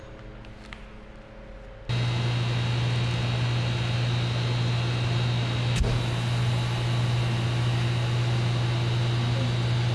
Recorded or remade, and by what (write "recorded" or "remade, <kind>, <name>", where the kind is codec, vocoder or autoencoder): recorded